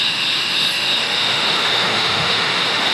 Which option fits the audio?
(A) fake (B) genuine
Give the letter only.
A